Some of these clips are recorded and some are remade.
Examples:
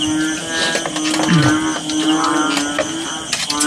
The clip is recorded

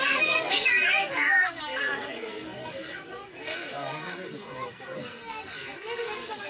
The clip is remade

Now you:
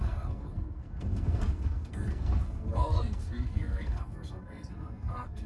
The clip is remade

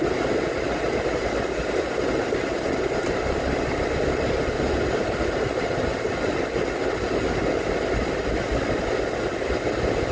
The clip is recorded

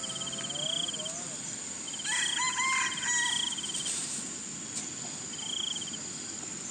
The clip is recorded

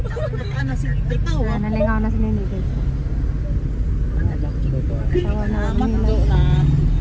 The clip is recorded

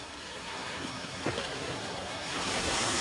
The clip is remade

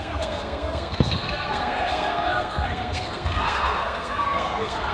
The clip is remade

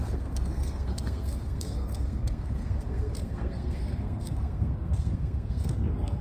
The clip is remade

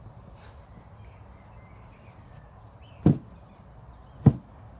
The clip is recorded